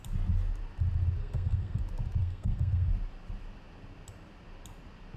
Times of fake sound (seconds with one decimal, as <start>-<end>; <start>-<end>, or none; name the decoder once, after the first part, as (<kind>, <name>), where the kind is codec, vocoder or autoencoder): 1.2-1.8 (codec, SNAC); 2.2-2.9

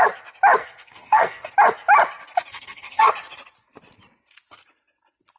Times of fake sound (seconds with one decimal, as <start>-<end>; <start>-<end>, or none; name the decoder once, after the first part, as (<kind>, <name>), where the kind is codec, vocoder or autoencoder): 0.6-1.5 (codec, SNAC); 2.5-3.1

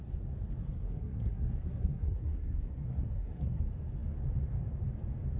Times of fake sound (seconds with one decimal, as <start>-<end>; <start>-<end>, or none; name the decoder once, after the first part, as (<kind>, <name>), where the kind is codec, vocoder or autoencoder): 0.6-3.6 (codec, SNAC)

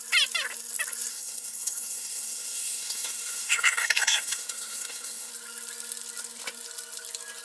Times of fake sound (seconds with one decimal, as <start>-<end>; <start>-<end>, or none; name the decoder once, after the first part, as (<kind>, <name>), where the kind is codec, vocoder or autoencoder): 1.1-5.3 (codec, SNAC)

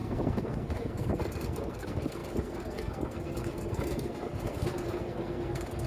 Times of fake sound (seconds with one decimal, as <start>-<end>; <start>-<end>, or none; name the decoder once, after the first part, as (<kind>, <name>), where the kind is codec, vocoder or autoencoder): 0.0-5.9 (codec, SNAC)

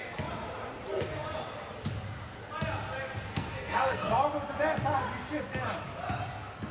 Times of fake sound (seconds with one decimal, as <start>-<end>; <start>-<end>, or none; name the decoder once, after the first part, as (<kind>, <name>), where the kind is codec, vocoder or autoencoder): 3.3-4.1 (codec, SNAC)